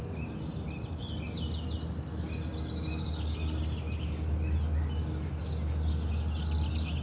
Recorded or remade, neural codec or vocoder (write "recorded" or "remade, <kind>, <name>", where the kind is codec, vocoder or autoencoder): recorded